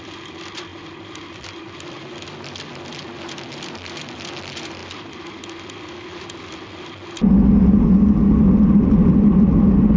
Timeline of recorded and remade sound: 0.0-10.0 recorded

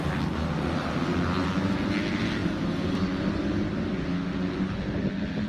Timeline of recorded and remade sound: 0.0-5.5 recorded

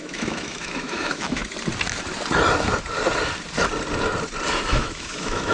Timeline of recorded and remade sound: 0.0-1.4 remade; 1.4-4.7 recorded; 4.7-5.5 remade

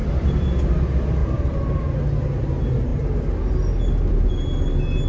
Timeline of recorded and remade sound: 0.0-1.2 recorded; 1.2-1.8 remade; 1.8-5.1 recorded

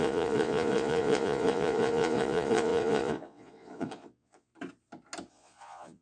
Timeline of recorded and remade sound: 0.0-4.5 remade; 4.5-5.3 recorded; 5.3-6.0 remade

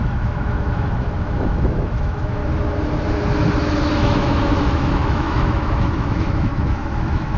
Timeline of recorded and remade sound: 0.0-2.4 remade; 2.4-3.9 recorded; 3.9-7.4 remade

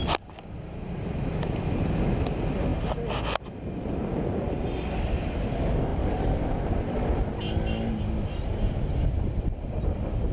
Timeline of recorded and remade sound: 0.0-10.3 recorded

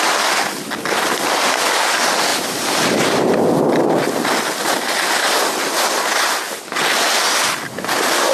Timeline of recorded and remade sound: 0.0-2.3 recorded; 2.3-3.6 remade; 3.6-8.3 recorded